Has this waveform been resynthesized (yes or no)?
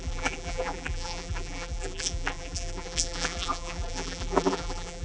yes